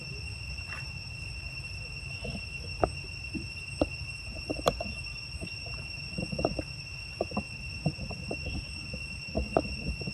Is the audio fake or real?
real